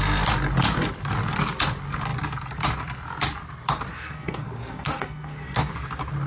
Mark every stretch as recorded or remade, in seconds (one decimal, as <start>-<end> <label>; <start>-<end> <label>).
0.0-3.9 recorded; 3.9-5.7 remade; 5.7-6.3 recorded